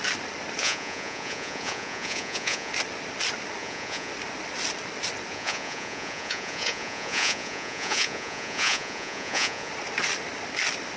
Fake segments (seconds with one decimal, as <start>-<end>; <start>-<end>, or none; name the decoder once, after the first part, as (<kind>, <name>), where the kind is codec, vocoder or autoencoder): 0.6-2.7 (vocoder, Vocos); 3.6-4.1; 5.3-9.7